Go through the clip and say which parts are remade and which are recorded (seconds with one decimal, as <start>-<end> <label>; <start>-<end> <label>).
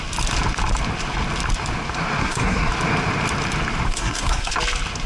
0.0-2.2 recorded; 2.2-2.7 remade; 2.7-3.9 recorded; 3.9-4.5 remade; 4.5-5.1 recorded